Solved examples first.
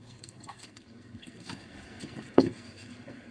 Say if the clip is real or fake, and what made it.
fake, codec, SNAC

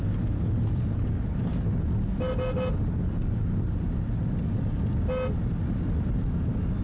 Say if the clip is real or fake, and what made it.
real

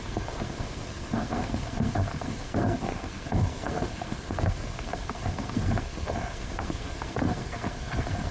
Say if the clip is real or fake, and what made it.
fake, codec, SNAC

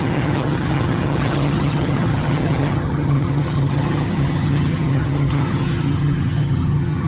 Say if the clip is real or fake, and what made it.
fake, vocoder, HiFi-GAN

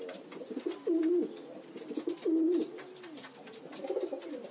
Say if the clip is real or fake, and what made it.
real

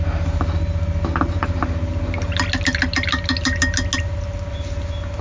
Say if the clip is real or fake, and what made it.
real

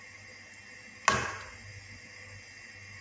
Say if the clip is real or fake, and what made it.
real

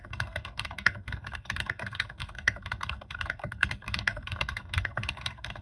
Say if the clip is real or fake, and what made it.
fake, codec, SNAC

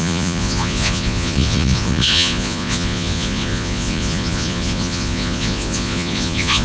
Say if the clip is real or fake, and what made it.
fake, vocoder, Vocos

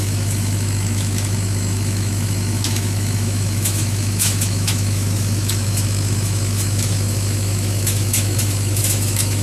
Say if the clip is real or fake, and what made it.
fake, autoencoder, DAC-VAE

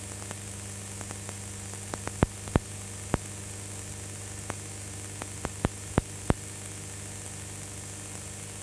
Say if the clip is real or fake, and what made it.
real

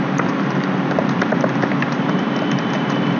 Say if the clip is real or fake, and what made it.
fake, vocoder, BigVGAN v2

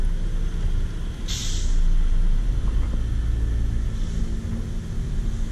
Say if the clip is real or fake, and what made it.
real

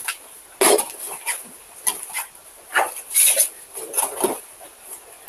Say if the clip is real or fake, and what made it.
real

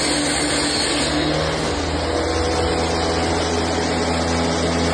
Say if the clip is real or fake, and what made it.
real